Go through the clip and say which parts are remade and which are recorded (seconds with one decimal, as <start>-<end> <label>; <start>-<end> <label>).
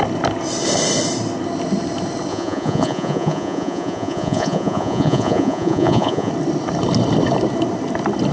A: 0.0-2.3 recorded; 2.3-6.3 remade; 6.3-8.3 recorded